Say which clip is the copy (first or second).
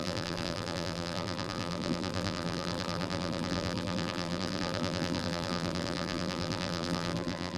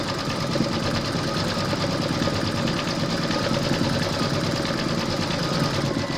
first